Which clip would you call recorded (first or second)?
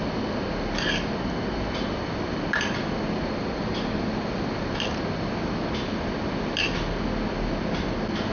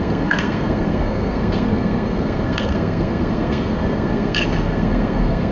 first